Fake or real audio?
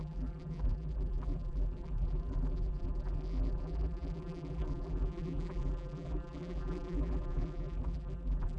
fake